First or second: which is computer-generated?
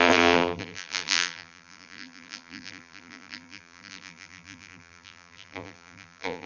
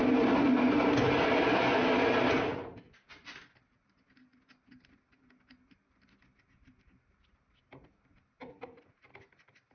first